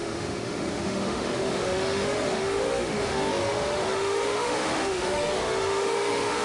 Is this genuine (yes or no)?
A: no